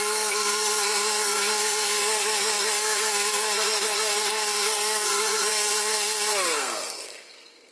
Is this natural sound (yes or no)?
no